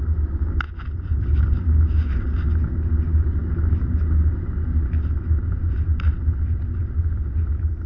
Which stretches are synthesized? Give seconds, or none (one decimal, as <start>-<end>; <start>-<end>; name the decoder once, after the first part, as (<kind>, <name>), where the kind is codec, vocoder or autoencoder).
none